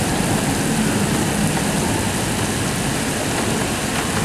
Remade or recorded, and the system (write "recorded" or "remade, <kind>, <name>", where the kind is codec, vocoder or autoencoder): recorded